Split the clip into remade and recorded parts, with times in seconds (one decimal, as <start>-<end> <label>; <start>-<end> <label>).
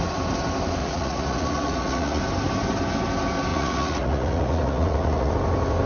0.0-0.8 recorded; 0.8-2.2 remade; 2.2-3.5 recorded; 3.5-5.3 remade; 5.3-5.9 recorded